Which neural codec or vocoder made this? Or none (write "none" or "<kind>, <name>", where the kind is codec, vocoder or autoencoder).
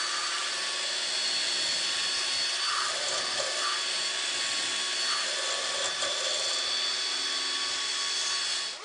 none